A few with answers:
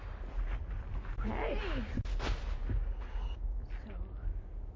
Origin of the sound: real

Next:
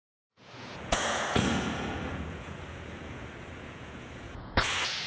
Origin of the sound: fake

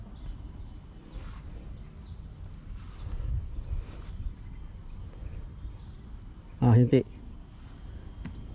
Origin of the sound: real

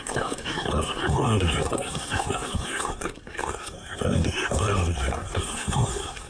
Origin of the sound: fake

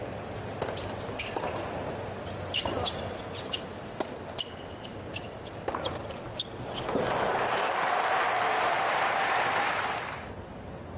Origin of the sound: real